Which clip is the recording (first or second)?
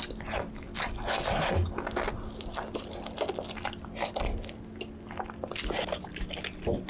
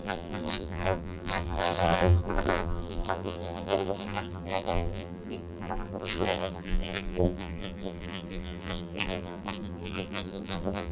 first